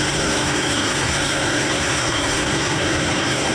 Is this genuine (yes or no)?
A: no